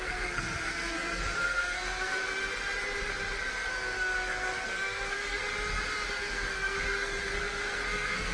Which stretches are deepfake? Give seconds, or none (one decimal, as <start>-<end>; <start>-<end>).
0.0-2.2; 3.4-5.5; 6.1-8.3